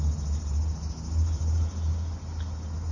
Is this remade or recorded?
recorded